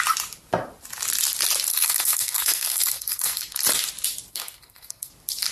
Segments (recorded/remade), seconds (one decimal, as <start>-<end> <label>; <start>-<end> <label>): 0.0-1.7 recorded; 1.7-3.6 remade; 3.6-4.3 recorded; 4.3-5.1 remade; 5.1-5.5 recorded